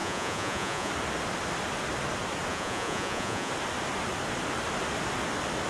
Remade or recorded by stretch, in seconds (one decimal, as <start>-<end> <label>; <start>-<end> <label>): 0.0-0.9 remade; 0.9-2.5 recorded; 2.5-3.5 remade; 3.5-5.7 recorded